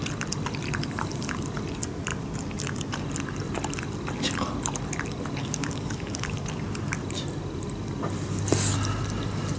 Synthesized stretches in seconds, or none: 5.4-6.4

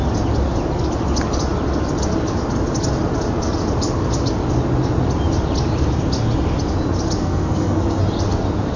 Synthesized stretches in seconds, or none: 7.2-8.0

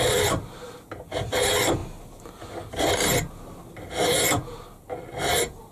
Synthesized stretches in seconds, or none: none

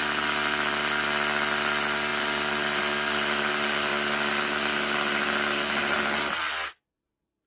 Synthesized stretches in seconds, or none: none

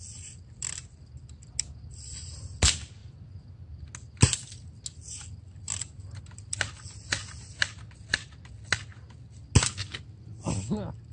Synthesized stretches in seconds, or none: none

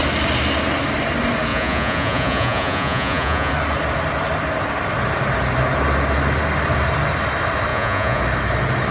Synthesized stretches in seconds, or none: 1.5-3.5; 7.7-8.2